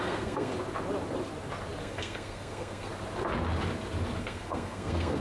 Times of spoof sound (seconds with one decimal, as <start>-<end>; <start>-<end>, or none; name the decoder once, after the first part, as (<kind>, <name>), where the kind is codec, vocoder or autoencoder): 0.0-0.5 (codec, SNAC); 1.8-2.9; 4.2-5.2